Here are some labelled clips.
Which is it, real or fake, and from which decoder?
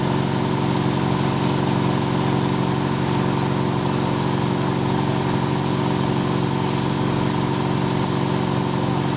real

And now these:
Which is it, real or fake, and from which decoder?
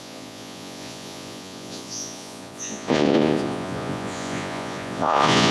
fake, vocoder, Vocos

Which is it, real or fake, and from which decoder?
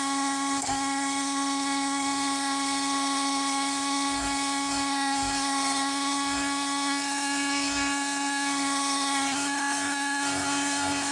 fake, codec, SNAC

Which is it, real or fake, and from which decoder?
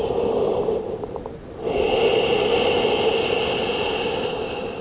real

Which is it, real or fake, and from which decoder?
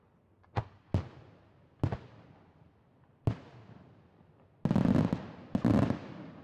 real